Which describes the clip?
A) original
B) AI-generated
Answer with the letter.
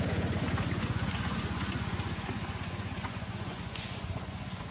B